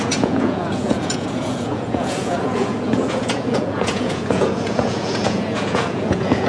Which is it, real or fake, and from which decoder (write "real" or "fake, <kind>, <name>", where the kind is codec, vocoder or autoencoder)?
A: fake, vocoder, Vocos